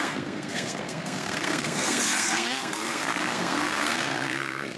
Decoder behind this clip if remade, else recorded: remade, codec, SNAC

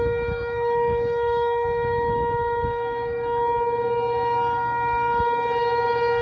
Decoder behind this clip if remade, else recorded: remade, autoencoder, DAC-VAE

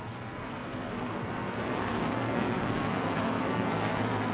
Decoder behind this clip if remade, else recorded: remade, codec, SNAC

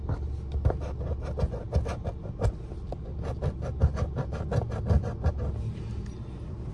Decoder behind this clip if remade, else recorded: recorded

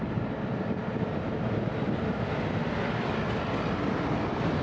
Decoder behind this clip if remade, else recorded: remade, vocoder, BigVGAN v2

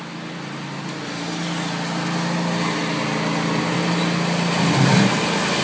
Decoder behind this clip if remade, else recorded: recorded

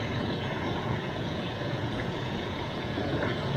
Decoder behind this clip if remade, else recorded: remade, vocoder, Vocos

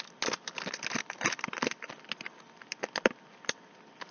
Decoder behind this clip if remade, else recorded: recorded